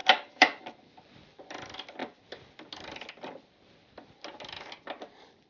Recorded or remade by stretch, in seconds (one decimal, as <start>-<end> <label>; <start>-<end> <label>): 0.0-0.6 remade; 0.6-5.5 recorded